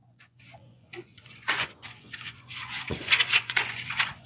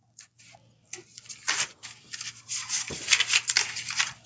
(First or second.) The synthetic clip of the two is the first